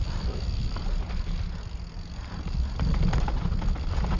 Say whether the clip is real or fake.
real